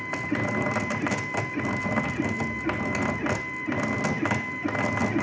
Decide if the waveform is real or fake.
real